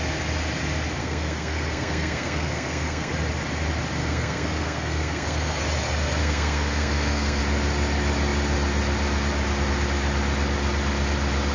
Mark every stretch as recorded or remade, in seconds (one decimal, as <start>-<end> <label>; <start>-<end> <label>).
0.0-1.0 recorded; 1.0-3.1 remade; 3.1-4.0 recorded; 4.0-5.6 remade; 5.6-6.2 recorded; 6.2-7.4 remade; 7.4-11.5 recorded